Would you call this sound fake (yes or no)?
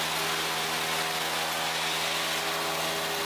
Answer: no